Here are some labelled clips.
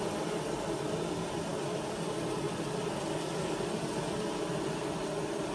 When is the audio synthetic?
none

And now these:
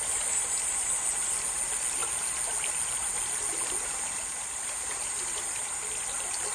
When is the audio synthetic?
none

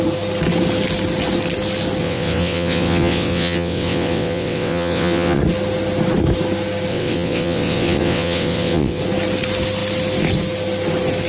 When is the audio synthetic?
2.0-5.4; 6.9-9.0

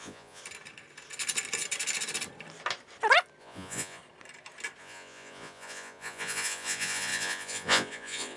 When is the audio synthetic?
0.0-0.4; 3.4-4.0; 4.8-8.4

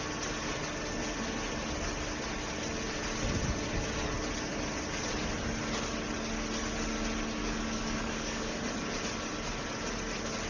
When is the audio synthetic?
7.4-8.5